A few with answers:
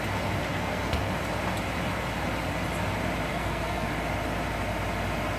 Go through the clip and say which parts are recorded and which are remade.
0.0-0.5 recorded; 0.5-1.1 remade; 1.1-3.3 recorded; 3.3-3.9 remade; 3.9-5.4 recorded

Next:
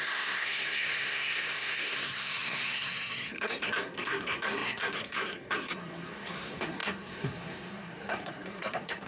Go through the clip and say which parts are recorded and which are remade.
0.0-9.1 remade